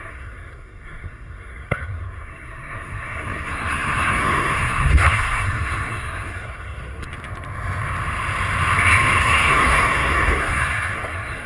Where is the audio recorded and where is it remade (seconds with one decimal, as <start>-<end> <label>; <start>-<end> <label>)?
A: 0.0-7.1 remade; 7.1-9.2 recorded; 9.2-11.5 remade